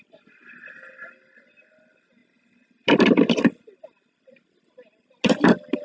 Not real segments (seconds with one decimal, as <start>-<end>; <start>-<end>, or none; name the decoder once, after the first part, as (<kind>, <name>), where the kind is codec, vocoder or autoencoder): none